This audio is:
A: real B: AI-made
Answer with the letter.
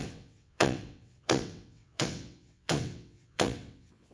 B